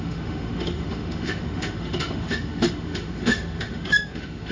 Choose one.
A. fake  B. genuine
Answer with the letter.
A